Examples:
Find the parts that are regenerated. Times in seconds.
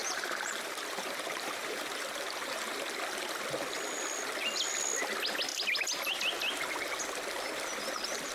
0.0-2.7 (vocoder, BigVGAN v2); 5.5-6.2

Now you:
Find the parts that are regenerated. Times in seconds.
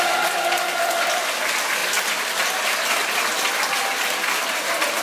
0.0-3.8 (vocoder, BigVGAN v2)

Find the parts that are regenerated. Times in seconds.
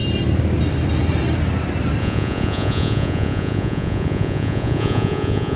2.0-5.6 (vocoder, Vocos)